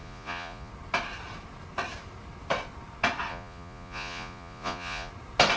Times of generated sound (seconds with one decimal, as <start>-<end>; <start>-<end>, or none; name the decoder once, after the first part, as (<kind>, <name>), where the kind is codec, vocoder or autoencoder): 0.0-0.7 (vocoder, Vocos); 3.3-5.1